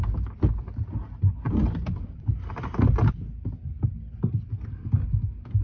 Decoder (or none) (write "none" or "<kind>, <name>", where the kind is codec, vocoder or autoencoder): none